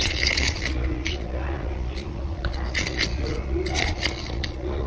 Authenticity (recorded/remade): remade